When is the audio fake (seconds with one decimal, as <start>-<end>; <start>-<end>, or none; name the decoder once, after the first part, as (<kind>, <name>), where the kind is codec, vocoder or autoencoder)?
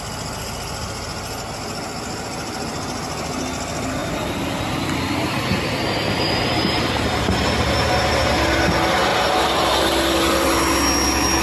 4.0-7.2 (vocoder, BigVGAN v2)